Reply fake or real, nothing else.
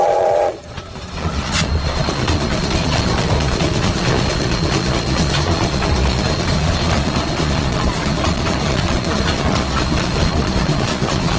fake